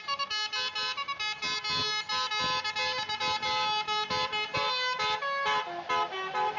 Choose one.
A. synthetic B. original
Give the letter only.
B